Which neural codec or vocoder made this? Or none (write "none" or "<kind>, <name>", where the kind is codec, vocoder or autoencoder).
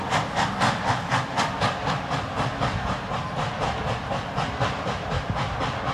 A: none